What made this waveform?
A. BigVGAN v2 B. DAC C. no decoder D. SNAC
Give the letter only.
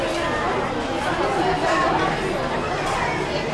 C